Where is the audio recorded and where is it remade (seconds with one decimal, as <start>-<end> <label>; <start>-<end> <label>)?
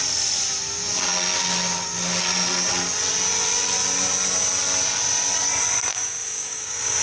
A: 0.0-5.9 recorded; 5.9-7.0 remade